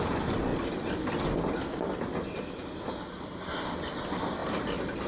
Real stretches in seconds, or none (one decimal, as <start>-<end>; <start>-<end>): 0.0-5.1